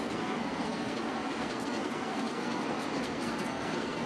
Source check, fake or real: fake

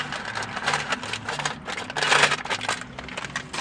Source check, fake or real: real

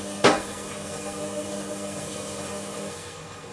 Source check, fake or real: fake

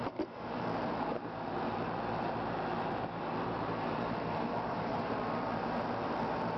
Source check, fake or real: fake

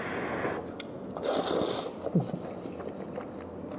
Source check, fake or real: real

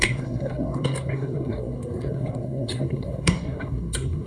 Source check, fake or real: fake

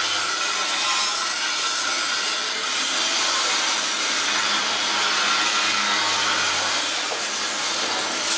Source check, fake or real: real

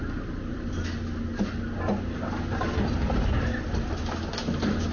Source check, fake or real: real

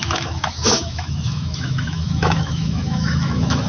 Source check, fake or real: fake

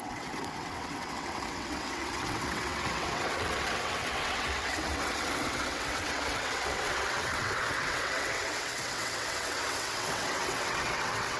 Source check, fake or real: fake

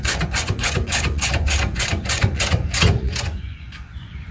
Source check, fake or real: fake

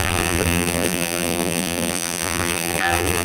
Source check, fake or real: fake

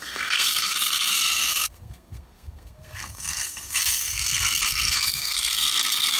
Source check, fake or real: fake